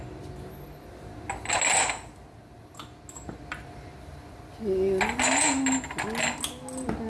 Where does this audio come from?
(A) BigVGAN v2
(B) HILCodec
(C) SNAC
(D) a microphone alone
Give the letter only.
D